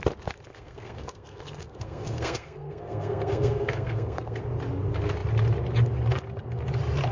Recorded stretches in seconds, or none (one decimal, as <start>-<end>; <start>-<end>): 0.0-0.5; 4.4-7.1